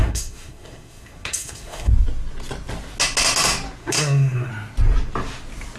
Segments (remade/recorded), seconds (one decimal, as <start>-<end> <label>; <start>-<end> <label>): 0.0-1.9 remade; 1.9-3.8 recorded; 3.8-4.5 remade; 4.5-5.8 recorded